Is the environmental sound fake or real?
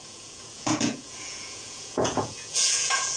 fake